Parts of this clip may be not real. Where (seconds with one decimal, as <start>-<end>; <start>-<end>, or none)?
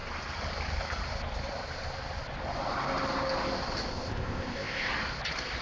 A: 3.9-4.9